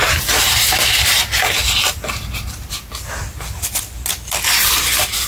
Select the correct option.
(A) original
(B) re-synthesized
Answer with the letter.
A